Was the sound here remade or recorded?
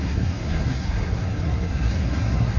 remade